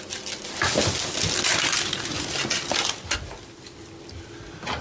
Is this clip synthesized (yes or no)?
no